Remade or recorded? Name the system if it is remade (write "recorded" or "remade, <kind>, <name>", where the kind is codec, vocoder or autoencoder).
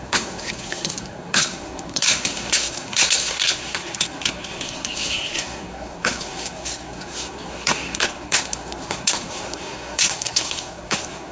remade, codec, SNAC